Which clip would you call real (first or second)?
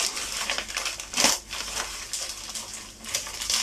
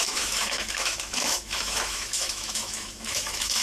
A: first